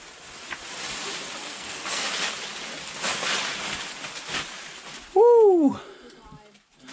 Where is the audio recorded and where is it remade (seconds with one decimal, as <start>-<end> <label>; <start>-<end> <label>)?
0.0-1.4 recorded; 1.4-2.1 remade; 2.1-6.9 recorded